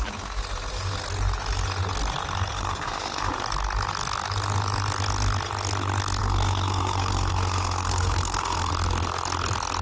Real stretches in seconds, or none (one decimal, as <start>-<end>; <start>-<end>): 0.0-2.5; 3.3-6.2; 8.7-9.8